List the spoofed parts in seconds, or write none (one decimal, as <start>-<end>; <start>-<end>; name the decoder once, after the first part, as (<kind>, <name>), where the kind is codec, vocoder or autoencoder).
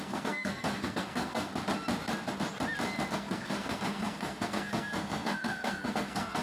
0.0-1.5 (codec, SNAC); 3.1-6.4